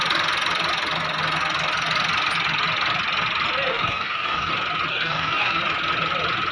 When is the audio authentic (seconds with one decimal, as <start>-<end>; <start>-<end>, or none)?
0.0-3.7; 4.5-4.9; 5.6-6.5